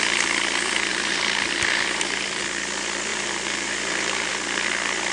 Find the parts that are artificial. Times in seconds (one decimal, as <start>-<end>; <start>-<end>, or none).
0.9-2.4; 3.1-4.3